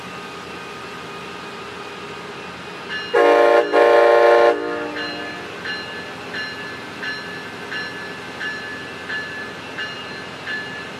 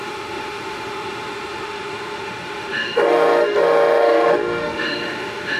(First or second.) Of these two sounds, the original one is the first